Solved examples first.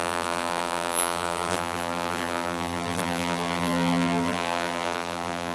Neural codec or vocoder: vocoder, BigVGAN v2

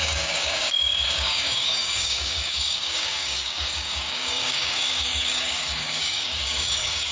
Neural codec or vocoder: codec, DAC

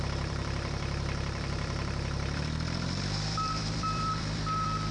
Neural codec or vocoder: vocoder, BigVGAN v2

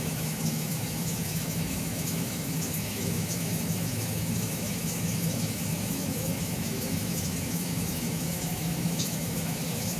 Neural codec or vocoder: autoencoder, DAC-VAE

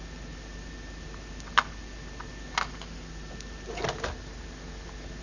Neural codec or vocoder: none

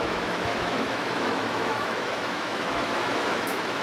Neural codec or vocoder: autoencoder, DAC-VAE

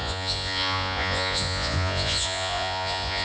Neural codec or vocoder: vocoder, Vocos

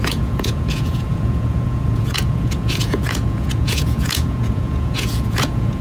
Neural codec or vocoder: vocoder, Vocos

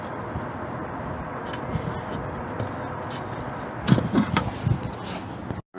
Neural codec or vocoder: none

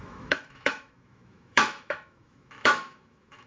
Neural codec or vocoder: autoencoder, DAC-VAE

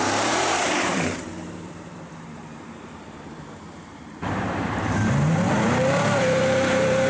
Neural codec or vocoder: vocoder, BigVGAN v2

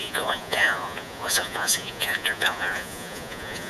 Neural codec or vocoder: vocoder, Vocos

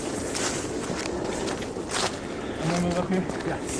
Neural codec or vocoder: none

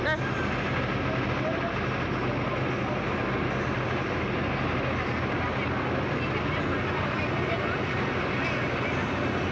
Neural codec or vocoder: none